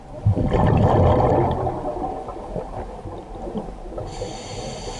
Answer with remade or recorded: recorded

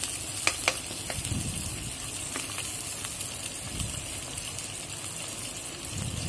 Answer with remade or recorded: recorded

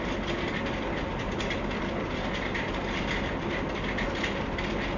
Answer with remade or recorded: recorded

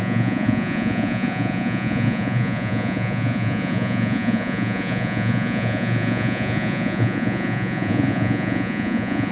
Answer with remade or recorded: remade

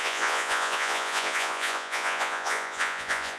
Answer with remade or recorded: remade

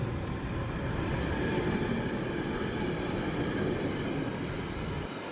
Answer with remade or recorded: recorded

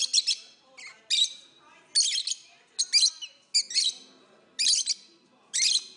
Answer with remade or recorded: recorded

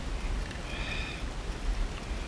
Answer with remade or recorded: recorded